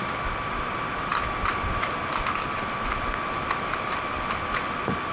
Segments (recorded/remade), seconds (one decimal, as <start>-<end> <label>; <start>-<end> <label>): 0.0-5.1 recorded